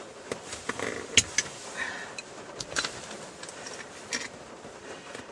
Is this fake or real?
real